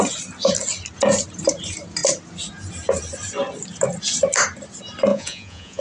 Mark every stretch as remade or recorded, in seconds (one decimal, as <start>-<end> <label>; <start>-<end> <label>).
0.0-5.1 recorded; 5.1-5.8 remade